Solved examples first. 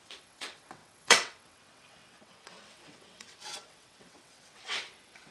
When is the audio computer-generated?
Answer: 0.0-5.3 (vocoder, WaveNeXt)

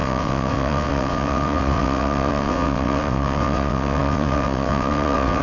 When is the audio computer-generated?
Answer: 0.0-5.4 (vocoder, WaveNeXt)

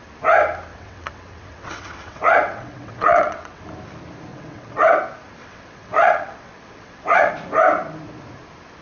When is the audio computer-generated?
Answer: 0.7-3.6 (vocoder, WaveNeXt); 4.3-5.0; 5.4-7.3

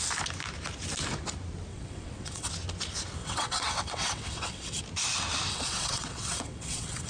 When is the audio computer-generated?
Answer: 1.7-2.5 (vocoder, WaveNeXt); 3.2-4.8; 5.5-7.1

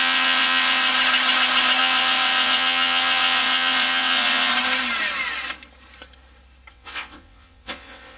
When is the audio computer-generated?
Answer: 0.0-0.9 (vocoder, WaveNeXt); 1.8-4.5; 6.7-8.2

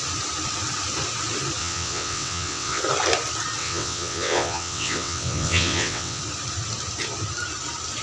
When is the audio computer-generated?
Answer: 1.6-2.8 (vocoder, WaveNeXt); 3.6-6.2